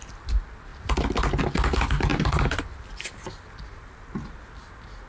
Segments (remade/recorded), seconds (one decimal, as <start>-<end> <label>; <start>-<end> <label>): 0.0-2.1 recorded; 2.1-2.6 remade; 2.6-5.1 recorded